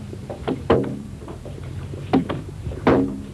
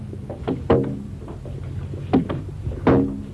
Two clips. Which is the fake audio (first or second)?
first